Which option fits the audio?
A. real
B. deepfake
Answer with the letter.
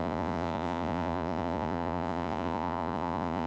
B